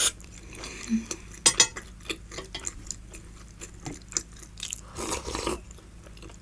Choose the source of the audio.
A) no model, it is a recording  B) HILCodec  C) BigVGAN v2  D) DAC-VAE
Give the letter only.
A